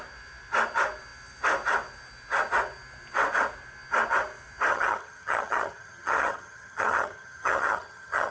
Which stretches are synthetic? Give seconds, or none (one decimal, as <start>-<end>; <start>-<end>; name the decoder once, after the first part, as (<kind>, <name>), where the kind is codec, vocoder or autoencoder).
4.7-8.3 (vocoder, HiFi-GAN)